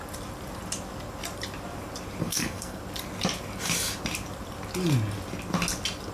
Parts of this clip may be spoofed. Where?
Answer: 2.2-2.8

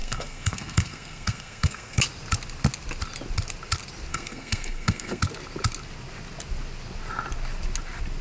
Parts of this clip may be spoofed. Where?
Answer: 0.0-2.0; 4.1-5.2

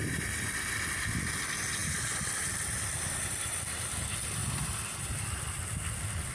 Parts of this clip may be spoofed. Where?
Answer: 0.0-0.7; 1.8-4.0; 4.4-5.4

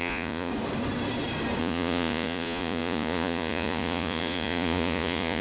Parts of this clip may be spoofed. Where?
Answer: 0.0-0.5; 1.6-5.4

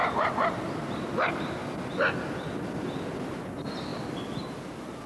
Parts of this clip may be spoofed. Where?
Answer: 0.0-1.6; 3.3-3.9; 4.5-5.1

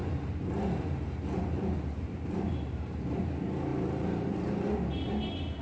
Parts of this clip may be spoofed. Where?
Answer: 0.0-3.2; 3.7-4.5

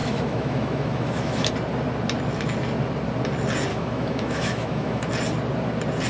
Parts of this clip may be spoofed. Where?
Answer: 0.0-1.5; 3.7-5.1

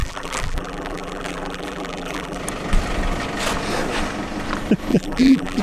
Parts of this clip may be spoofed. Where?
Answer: 0.0-2.4; 4.9-5.6